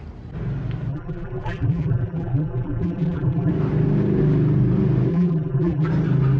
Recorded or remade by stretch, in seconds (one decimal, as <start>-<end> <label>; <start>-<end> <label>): 0.0-0.9 recorded; 0.9-3.5 remade; 3.5-5.1 recorded; 5.1-5.9 remade; 5.9-6.4 recorded